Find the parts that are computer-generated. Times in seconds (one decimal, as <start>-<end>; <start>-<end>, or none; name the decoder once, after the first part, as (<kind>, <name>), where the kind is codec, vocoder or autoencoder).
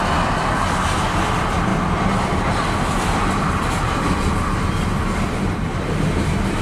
3.2-6.6 (vocoder, BigVGAN v2)